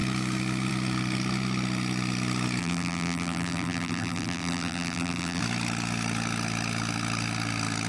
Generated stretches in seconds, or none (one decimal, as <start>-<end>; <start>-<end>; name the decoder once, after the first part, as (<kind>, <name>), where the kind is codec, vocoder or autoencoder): 2.6-5.4 (vocoder, BigVGAN v2)

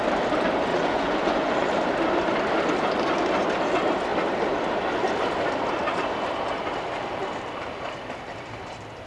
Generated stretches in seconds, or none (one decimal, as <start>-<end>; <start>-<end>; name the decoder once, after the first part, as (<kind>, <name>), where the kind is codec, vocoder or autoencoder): 0.7-1.7 (vocoder, Vocos)

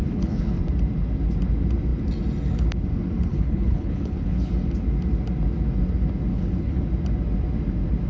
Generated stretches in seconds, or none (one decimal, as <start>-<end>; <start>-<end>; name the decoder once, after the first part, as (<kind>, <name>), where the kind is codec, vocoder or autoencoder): 0.0-0.6 (codec, HILCodec); 3.3-4.5; 6.3-6.8

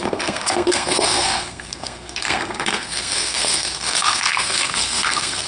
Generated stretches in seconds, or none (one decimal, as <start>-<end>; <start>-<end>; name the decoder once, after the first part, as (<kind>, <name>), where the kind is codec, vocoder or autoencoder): 0.0-5.5 (codec, SNAC)

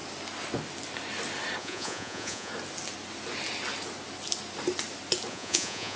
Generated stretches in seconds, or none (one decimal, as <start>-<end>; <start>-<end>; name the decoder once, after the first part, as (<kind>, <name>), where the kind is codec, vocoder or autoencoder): 1.6-2.5 (vocoder, Vocos); 5.3-6.0

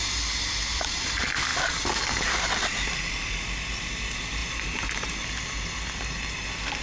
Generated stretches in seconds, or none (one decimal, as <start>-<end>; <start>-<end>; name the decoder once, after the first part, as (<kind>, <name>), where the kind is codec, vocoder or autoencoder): 1.5-3.3 (vocoder, BigVGAN v2)